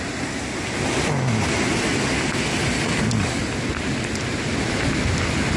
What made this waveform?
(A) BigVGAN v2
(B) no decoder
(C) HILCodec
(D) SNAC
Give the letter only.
B